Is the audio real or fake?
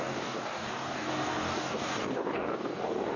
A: fake